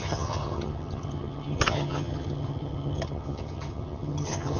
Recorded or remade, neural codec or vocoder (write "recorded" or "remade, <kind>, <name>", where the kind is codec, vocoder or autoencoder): remade, vocoder, HiFi-GAN